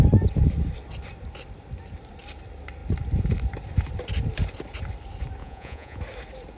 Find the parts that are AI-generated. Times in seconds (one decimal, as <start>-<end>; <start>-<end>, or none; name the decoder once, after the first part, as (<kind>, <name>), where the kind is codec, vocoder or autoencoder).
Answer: 5.4-6.0 (vocoder, Vocos)